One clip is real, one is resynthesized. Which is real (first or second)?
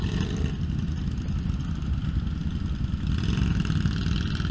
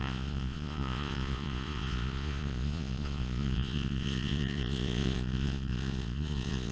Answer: first